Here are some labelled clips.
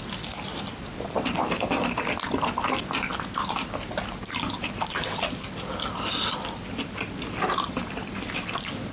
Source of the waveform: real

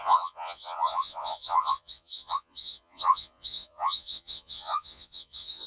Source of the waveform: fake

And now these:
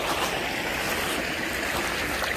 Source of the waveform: real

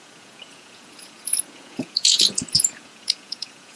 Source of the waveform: fake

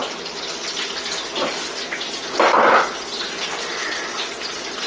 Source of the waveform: real